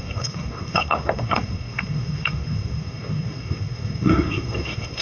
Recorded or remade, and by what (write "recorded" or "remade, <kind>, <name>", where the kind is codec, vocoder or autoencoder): remade, codec, SNAC